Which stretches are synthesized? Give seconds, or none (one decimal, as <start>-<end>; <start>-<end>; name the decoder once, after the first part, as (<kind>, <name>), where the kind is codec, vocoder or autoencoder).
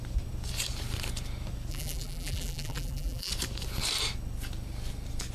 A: 1.7-3.3 (vocoder, BigVGAN v2)